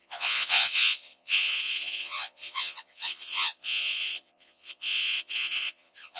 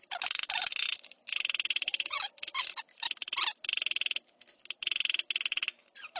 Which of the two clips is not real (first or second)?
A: first